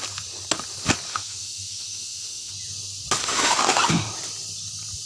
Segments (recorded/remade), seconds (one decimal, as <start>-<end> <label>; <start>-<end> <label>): 0.0-1.1 recorded; 1.1-2.5 remade; 2.5-3.2 recorded; 3.2-3.8 remade; 3.8-5.1 recorded